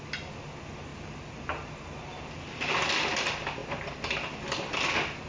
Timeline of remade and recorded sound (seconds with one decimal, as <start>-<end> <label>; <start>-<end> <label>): 0.0-5.3 recorded